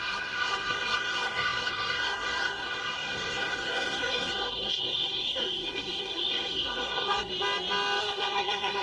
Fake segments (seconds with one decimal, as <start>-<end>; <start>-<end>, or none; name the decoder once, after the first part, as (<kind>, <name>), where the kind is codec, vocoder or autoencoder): 0.0-7.3 (codec, SNAC); 8.0-8.8